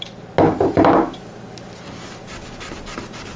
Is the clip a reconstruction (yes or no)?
no